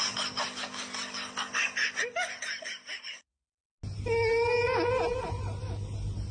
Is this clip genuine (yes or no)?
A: yes